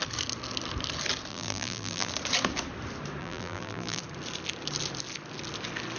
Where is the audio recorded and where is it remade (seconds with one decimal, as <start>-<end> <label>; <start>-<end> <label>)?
0.0-1.3 recorded; 1.3-2.1 remade; 2.1-3.2 recorded; 3.2-4.0 remade; 4.0-6.0 recorded